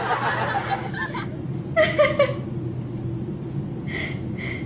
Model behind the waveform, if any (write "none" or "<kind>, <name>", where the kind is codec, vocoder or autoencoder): none